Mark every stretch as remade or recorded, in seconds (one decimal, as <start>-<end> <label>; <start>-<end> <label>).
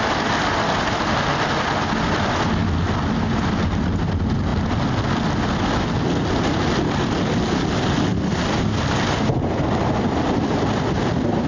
0.0-11.5 recorded